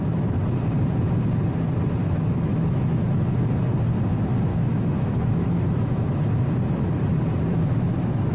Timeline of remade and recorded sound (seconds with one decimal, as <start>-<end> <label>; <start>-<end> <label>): 0.0-2.0 recorded; 2.0-3.2 remade; 3.2-4.5 recorded; 4.5-6.3 remade; 6.3-7.5 recorded; 7.5-8.3 remade